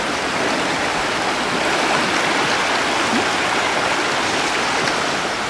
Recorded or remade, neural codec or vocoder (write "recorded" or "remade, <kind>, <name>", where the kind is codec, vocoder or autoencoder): recorded